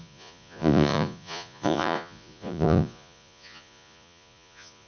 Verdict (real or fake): fake